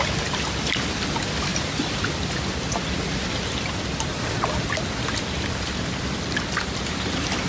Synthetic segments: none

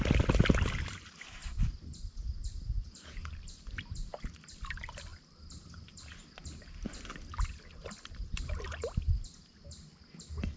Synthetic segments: none

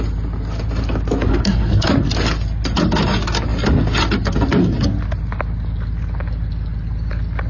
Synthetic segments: 1.3-1.9 (codec, SNAC)

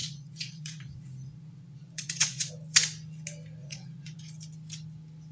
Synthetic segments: 0.0-2.5 (vocoder, Vocos); 3.6-4.2

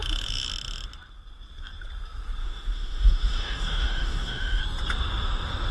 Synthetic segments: 2.4-4.6 (autoencoder, DAC-VAE)